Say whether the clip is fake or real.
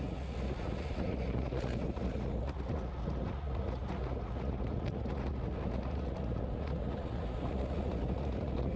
fake